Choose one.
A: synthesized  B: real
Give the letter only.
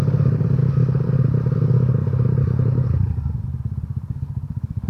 B